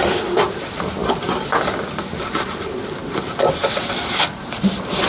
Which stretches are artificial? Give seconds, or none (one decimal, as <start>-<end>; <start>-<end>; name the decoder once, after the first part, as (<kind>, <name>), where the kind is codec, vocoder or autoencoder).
none